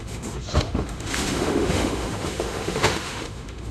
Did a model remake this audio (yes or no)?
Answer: yes